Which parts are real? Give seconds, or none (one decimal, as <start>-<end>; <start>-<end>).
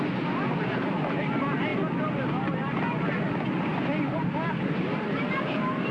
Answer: 0.0-5.9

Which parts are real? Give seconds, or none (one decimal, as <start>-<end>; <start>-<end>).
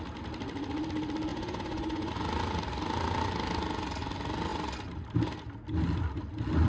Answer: 0.0-1.3; 2.1-6.7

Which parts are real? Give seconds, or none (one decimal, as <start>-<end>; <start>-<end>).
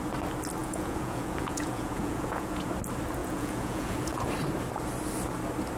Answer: 0.0-0.6; 2.7-3.2; 4.3-5.8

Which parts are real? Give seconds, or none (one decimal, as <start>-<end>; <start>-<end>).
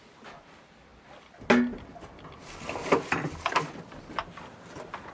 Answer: 0.0-5.1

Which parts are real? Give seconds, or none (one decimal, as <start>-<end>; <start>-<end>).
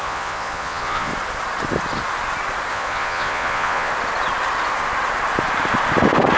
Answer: 1.1-2.7; 3.9-6.4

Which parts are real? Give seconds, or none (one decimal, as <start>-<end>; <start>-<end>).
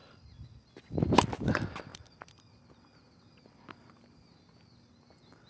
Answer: 0.0-5.5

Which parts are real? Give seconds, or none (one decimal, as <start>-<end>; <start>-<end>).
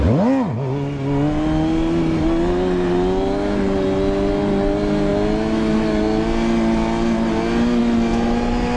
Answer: 0.0-8.8